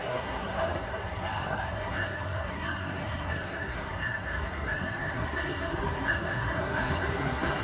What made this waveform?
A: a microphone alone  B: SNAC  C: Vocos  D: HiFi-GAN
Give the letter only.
B